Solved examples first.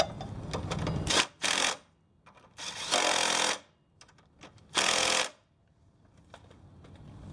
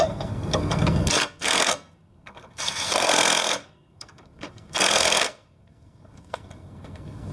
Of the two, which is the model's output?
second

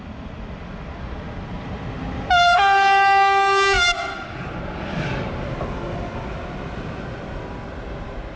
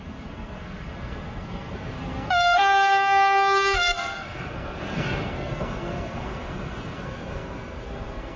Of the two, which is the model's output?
second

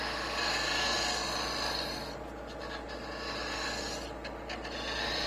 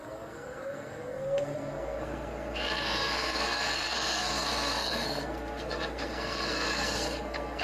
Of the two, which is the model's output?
second